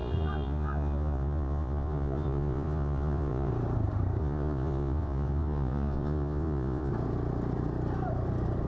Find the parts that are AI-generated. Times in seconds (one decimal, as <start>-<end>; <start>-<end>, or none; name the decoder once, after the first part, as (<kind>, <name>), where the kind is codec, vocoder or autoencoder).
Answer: 0.0-3.5 (vocoder, Vocos); 4.2-6.9